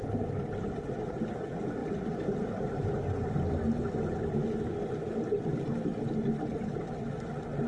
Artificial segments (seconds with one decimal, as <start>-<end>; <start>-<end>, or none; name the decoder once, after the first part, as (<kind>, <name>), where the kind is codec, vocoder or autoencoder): none